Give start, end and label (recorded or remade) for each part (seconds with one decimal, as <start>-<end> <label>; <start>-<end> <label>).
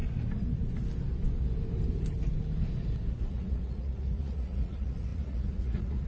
0.0-3.3 recorded; 3.3-6.1 remade